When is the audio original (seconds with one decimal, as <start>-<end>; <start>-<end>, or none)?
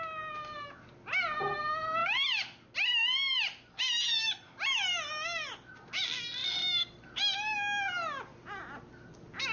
0.0-9.5